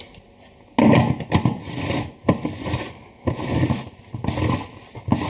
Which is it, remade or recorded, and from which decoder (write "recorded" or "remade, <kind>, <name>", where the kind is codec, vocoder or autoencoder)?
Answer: recorded